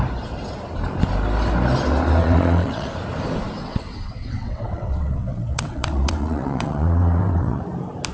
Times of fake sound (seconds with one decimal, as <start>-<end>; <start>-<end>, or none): 2.2-2.9; 3.6-7.6